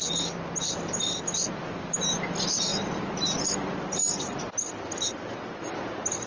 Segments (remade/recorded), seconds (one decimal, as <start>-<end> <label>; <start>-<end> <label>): 0.0-6.3 recorded